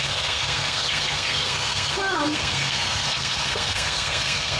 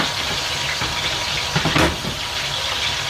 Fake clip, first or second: first